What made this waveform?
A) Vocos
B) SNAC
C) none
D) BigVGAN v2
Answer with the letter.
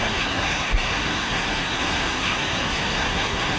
B